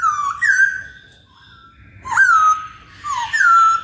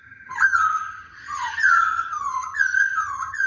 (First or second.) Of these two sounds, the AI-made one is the second